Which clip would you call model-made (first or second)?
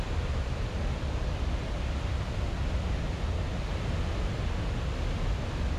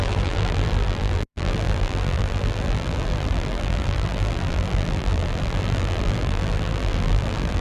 second